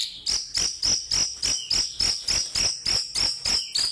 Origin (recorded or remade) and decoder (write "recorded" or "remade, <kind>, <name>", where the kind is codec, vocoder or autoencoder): recorded